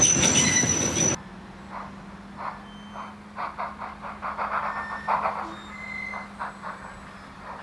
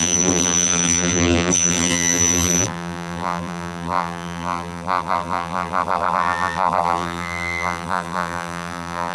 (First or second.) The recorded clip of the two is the first